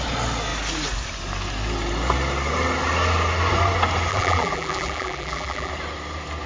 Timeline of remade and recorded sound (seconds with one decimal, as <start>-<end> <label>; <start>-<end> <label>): 0.0-4.1 recorded; 4.1-5.7 remade; 5.7-6.5 recorded